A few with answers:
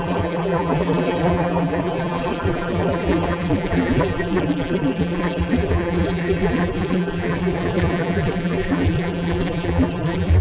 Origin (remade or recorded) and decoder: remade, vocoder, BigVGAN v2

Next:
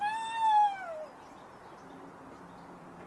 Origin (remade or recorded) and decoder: recorded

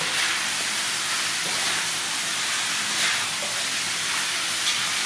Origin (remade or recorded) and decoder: recorded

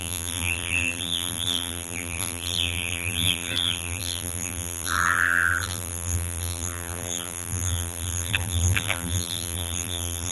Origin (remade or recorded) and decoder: remade, vocoder, BigVGAN v2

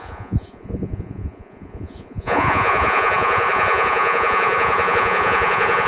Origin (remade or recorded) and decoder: remade, vocoder, Vocos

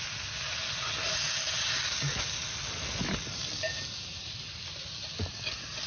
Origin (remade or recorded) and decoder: recorded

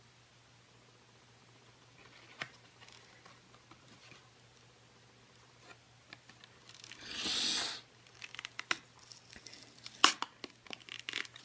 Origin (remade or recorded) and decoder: recorded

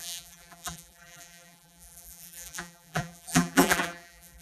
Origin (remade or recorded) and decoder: remade, vocoder, BigVGAN v2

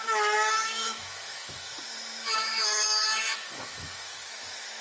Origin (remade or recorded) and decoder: remade, autoencoder, DAC-VAE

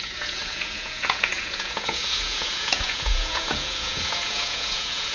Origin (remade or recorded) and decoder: remade, vocoder, Vocos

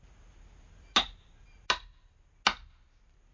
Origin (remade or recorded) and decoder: recorded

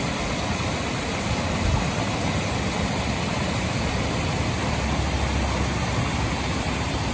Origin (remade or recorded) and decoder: recorded